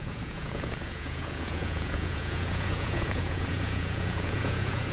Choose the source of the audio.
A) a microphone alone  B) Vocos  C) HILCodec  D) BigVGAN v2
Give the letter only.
B